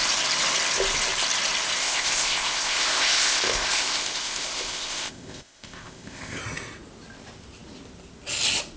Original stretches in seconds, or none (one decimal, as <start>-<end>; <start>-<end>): 0.0-1.8; 6.4-8.8